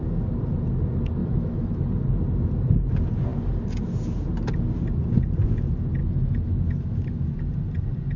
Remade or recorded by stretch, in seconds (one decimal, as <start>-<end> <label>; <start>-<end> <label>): 0.0-1.2 recorded; 1.2-1.9 remade; 1.9-6.0 recorded; 6.0-7.4 remade; 7.4-8.2 recorded